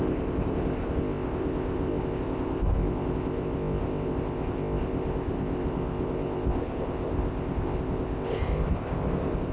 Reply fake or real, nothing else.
fake